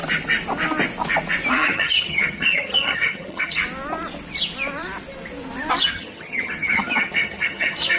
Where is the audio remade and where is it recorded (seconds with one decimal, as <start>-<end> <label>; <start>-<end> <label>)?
0.0-1.5 recorded; 1.5-3.6 remade; 3.6-5.8 recorded; 5.8-8.0 remade